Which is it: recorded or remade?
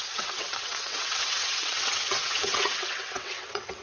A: remade